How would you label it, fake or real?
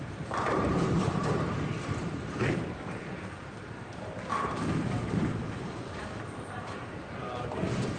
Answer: fake